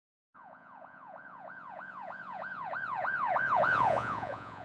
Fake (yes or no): yes